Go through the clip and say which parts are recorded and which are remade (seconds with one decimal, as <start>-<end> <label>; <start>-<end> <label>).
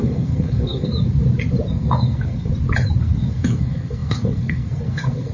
0.0-0.9 remade; 0.9-1.7 recorded; 1.7-2.5 remade; 2.5-3.0 recorded; 3.0-5.3 remade